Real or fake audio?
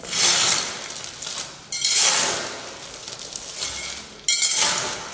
real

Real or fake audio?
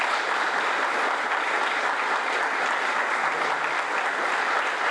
real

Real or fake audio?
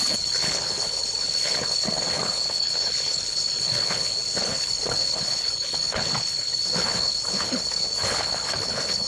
fake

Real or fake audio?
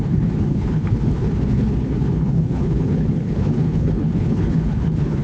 fake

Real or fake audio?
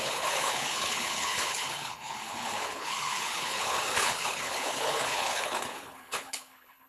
fake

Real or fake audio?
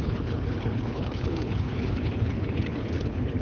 fake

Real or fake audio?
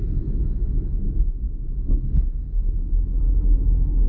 real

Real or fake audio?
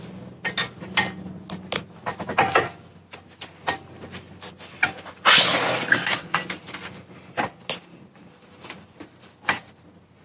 real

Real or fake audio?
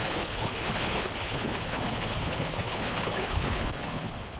fake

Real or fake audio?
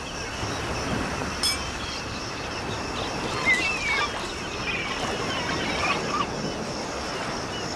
real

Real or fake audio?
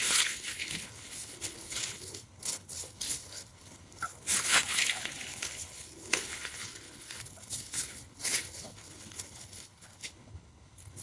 fake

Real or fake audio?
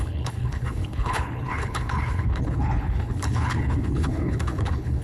fake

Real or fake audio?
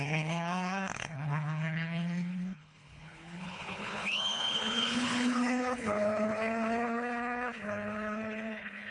fake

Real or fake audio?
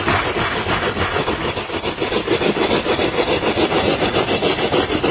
real